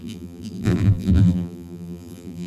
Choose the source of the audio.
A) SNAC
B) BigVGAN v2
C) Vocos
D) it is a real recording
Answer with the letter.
B